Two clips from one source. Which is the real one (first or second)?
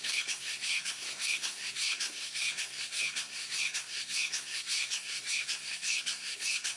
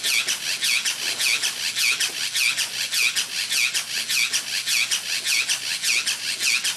second